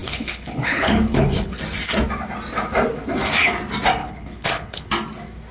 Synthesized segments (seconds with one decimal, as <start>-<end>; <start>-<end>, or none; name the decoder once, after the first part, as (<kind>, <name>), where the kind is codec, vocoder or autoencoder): 0.0-1.6 (codec, HILCodec); 4.0-4.9